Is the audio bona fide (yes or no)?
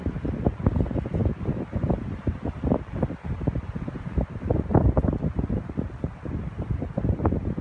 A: yes